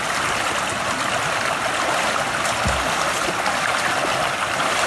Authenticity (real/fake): real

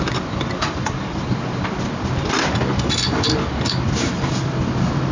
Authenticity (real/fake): real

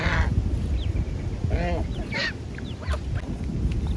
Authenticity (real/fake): real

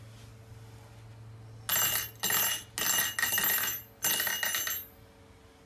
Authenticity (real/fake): real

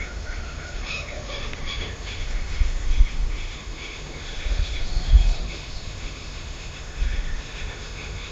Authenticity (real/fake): fake